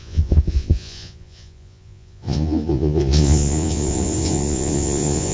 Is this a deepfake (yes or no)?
yes